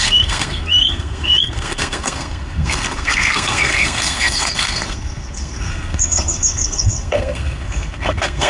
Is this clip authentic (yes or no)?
no